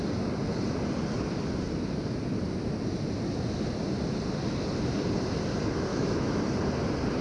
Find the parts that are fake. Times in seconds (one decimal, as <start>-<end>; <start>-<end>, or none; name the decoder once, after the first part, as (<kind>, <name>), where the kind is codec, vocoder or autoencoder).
5.9-6.4 (autoencoder, DAC-VAE)